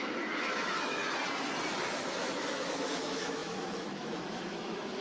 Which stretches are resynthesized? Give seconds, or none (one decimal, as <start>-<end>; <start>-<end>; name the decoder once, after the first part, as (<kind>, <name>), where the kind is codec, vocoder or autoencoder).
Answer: 0.0-1.0 (autoencoder, DAC-VAE); 1.8-5.0